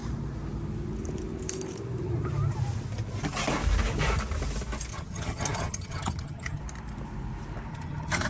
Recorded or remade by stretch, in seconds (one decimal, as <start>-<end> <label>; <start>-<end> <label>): 0.0-4.9 recorded; 4.9-6.6 remade; 6.6-7.7 recorded; 7.7-8.3 remade